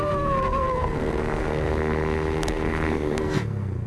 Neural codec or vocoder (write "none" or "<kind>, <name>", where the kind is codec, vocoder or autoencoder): codec, SNAC